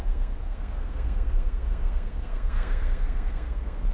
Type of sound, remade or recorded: remade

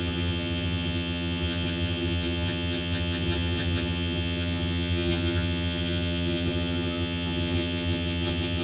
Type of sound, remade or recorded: remade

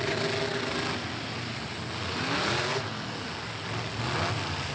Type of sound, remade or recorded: recorded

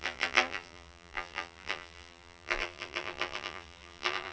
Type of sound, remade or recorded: remade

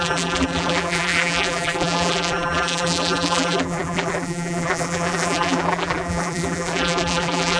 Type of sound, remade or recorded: remade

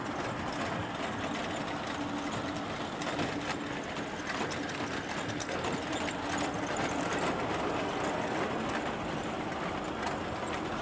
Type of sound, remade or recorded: recorded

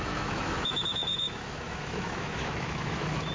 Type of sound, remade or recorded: remade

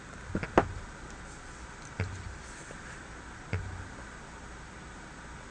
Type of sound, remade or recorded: recorded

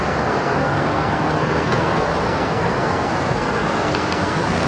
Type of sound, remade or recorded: remade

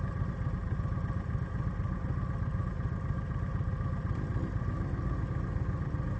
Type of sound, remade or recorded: recorded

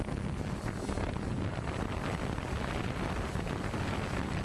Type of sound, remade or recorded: recorded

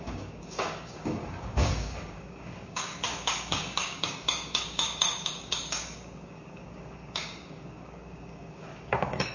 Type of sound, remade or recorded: remade